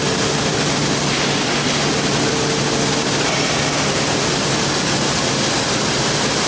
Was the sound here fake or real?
real